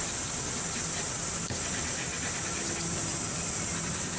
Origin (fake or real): real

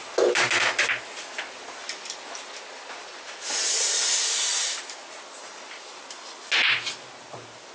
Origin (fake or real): real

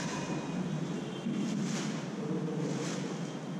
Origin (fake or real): real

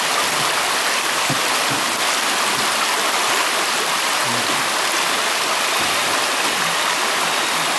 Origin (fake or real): real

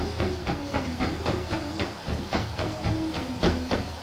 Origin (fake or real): fake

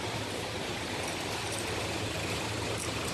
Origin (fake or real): real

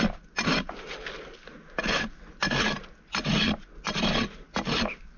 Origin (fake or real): real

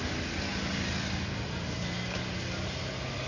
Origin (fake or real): real